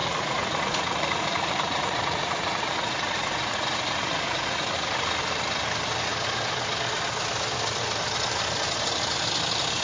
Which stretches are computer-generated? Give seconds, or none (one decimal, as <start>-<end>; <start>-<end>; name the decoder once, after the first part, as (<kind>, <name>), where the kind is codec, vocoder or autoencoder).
0.0-5.2 (vocoder, Vocos)